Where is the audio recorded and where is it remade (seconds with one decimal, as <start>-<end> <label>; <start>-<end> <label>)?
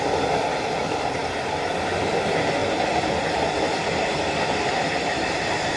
0.0-5.8 recorded